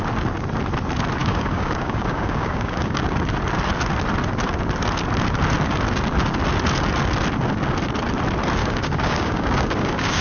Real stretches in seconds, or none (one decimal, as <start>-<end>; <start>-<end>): 0.0-1.2; 3.0-8.6

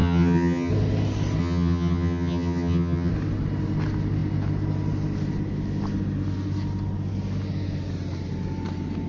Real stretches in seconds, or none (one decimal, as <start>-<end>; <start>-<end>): 0.7-1.4; 3.1-9.1

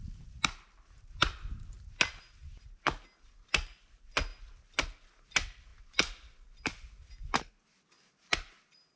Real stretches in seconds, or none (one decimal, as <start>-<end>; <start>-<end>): 0.0-9.0